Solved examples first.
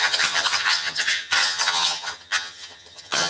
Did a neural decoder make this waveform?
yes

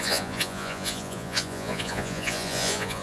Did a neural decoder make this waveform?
yes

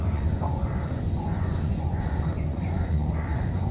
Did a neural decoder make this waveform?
yes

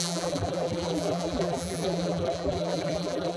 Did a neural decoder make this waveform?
yes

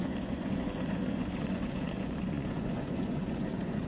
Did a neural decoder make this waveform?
yes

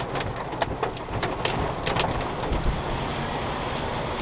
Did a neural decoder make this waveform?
no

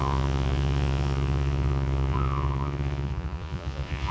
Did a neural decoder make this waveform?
yes